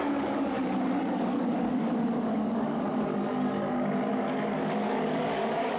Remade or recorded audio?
remade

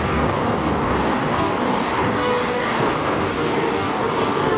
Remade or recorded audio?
remade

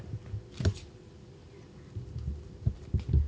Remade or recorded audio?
recorded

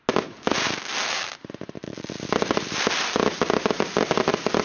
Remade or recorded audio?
recorded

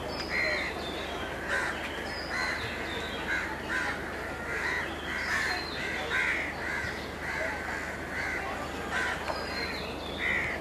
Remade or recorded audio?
recorded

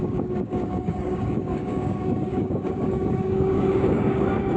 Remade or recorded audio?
remade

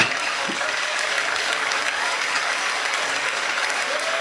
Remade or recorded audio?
remade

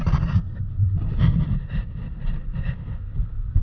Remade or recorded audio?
recorded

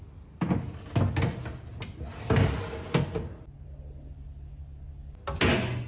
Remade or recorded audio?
recorded